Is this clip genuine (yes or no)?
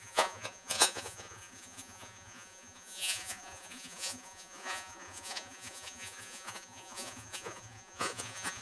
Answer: no